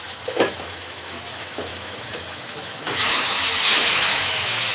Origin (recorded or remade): remade